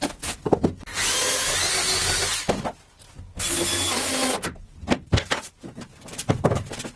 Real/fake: real